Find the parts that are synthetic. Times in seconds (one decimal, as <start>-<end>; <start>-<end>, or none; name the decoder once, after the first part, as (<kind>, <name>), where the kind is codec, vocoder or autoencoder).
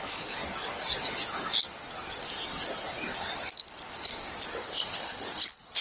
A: 4.6-5.8 (codec, HILCodec)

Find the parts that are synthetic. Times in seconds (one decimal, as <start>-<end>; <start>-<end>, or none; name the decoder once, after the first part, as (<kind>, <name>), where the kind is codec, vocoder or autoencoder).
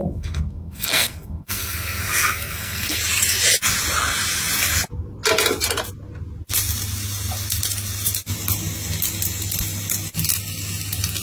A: 0.0-3.0 (codec, SNAC)